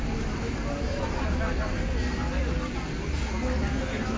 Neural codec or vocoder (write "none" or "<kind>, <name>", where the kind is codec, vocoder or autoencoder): none